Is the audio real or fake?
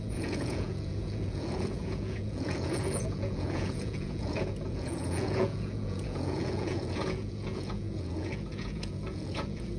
fake